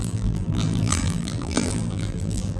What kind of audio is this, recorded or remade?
remade